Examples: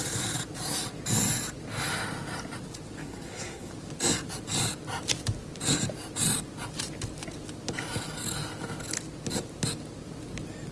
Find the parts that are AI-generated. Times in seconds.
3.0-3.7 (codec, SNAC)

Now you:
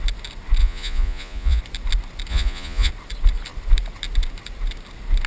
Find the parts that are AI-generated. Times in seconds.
0.6-1.6 (vocoder, Vocos); 2.3-2.9

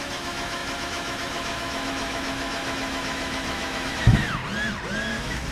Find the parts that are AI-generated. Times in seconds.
0.0-4.4 (autoencoder, DAC-VAE); 5.1-5.5

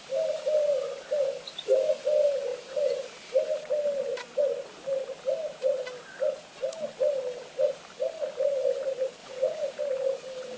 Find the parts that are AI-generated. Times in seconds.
9.2-9.8 (vocoder, Vocos)